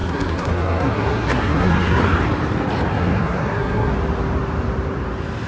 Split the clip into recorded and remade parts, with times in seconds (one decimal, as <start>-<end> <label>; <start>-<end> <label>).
0.0-2.0 remade; 2.0-2.9 recorded; 2.9-3.9 remade; 3.9-5.5 recorded